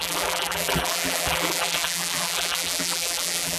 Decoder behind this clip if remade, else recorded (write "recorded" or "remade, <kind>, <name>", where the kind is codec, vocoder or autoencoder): remade, vocoder, BigVGAN v2